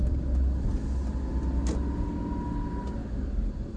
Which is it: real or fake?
real